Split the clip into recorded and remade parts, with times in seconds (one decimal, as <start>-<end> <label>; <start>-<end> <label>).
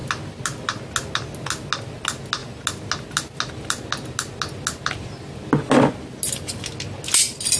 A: 0.0-7.6 recorded